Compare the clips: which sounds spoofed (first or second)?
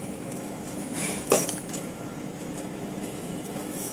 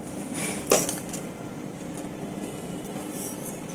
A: first